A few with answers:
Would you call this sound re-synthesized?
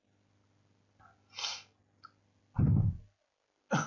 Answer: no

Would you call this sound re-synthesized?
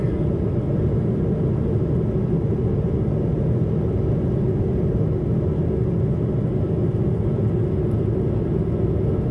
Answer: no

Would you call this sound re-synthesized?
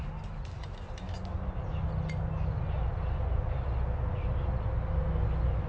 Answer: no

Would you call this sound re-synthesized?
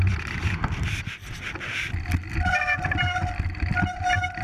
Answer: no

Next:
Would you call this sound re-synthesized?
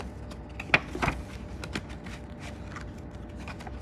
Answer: no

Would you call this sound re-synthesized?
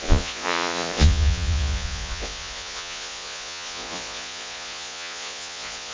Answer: yes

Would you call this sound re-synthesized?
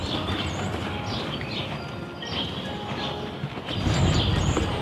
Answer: no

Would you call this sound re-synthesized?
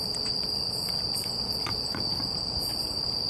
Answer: yes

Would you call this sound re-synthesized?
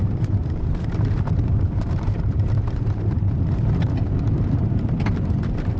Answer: yes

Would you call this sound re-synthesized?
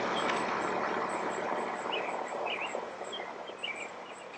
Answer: no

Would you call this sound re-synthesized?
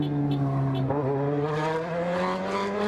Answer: no